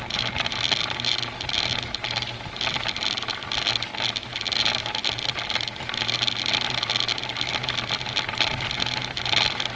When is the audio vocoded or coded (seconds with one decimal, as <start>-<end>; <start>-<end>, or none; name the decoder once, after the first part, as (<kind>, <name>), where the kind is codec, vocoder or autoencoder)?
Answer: none